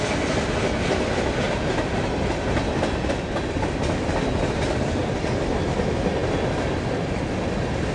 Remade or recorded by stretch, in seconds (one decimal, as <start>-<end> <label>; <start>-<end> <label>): 0.0-7.9 recorded